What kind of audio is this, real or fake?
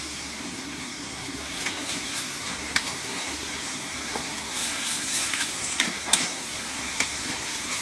fake